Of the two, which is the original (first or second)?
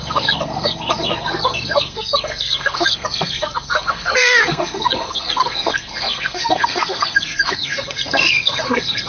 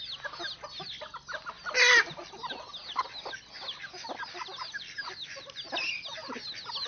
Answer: second